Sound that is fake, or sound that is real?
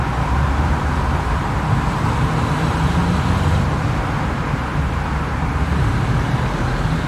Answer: fake